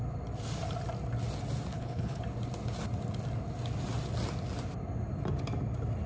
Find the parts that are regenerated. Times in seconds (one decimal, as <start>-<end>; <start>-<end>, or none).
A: 1.7-2.2